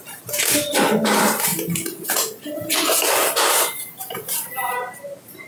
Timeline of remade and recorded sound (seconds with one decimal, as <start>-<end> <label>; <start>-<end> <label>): 0.0-1.5 remade; 1.5-2.4 recorded; 2.4-5.5 remade